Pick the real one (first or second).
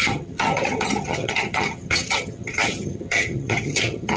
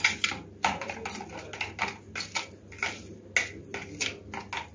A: second